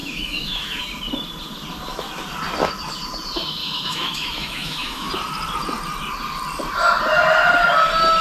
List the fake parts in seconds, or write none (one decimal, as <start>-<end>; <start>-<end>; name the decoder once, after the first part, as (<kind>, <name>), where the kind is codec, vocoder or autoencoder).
0.0-0.8 (autoencoder, DAC-VAE); 3.6-5.1